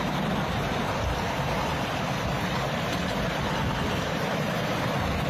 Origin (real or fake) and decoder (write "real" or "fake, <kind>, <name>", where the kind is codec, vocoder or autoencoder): real